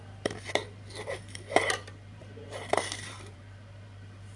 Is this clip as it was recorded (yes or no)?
no